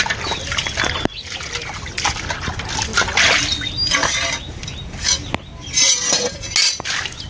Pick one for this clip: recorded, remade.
recorded